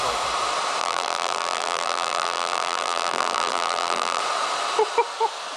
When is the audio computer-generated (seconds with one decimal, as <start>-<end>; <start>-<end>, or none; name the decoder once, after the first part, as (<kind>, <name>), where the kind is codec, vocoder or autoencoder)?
0.8-4.2 (vocoder, BigVGAN v2)